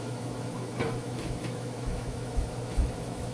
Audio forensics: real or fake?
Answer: fake